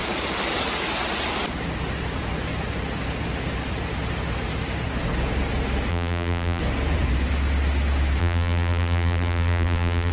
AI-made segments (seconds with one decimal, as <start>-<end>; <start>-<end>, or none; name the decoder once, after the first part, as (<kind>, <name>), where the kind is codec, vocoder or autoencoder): 5.9-6.6 (vocoder, BigVGAN v2); 8.2-10.1